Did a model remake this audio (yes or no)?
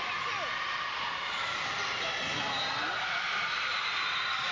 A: no